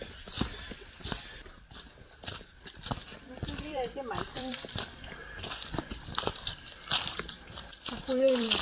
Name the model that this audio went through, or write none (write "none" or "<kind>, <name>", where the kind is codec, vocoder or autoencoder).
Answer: vocoder, BigVGAN v2